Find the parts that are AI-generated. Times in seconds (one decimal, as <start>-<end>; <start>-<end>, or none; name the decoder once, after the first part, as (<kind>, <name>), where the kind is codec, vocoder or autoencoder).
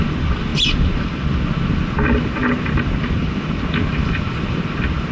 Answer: none